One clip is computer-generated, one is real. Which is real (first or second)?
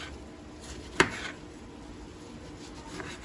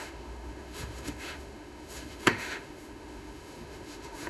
first